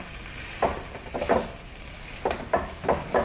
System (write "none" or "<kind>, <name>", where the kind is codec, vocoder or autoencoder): none